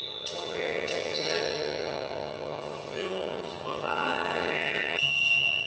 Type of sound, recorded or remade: remade